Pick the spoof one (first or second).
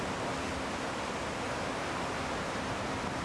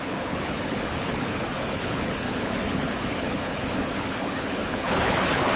second